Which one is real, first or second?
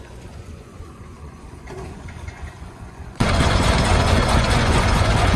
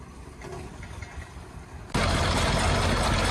second